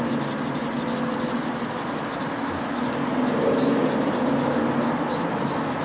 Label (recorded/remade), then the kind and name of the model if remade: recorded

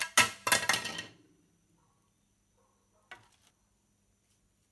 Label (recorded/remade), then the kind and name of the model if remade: recorded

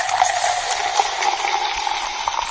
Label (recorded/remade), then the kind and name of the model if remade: recorded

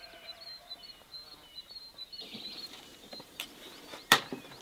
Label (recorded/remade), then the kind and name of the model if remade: remade, vocoder, BigVGAN v2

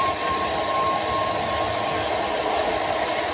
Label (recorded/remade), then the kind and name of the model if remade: remade, vocoder, BigVGAN v2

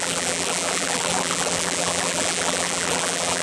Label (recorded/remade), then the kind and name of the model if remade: remade, vocoder, BigVGAN v2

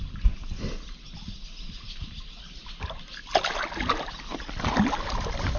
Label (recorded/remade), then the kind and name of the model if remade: recorded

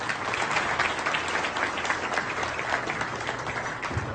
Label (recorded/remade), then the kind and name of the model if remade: recorded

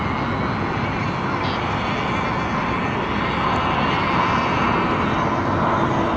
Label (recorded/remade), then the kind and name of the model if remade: recorded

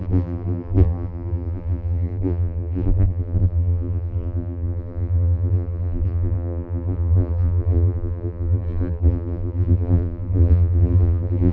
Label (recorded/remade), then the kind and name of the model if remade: remade, vocoder, BigVGAN v2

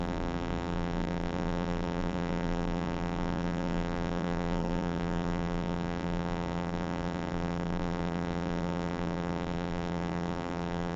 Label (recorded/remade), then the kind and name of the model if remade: remade, vocoder, BigVGAN v2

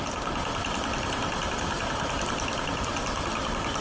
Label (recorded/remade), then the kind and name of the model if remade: recorded